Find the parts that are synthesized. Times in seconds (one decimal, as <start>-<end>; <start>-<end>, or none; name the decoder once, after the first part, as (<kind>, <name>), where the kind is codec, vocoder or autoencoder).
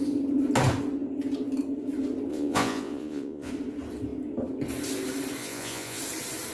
2.3-3.5 (vocoder, Vocos); 5.4-6.0